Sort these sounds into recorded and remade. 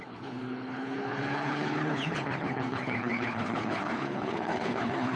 remade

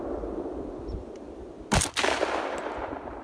recorded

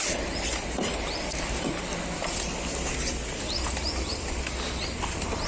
recorded